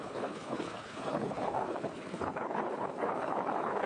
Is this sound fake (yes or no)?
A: yes